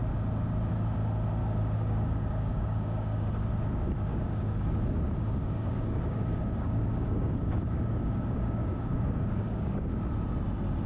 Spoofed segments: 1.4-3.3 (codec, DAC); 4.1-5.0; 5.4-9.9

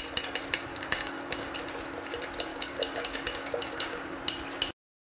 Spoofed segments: 0.7-1.5 (codec, DAC); 2.5-4.2

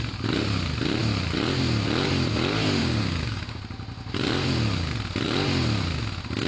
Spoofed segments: 2.8-3.6 (codec, DAC)

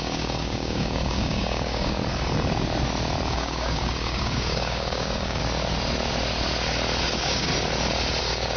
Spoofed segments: 0.0-2.0 (codec, DAC); 3.3-5.4; 7.0-7.5; 8.2-8.6

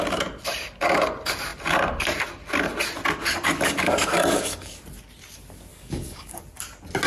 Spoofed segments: 3.2-4.8 (codec, DAC); 5.7-6.4

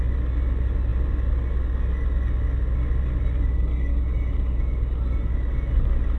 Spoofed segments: none

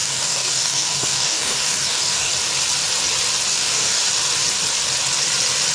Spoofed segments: 0.0-2.3 (codec, DAC); 3.5-4.1